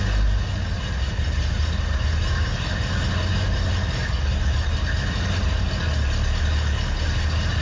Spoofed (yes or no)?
no